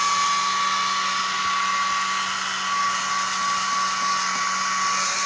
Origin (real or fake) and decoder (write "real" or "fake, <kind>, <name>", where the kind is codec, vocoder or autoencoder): real